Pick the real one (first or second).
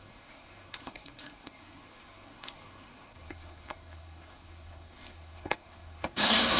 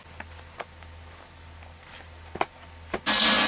second